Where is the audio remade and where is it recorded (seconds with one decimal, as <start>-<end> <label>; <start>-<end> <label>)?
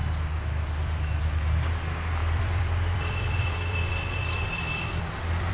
0.0-2.2 recorded; 2.2-5.5 remade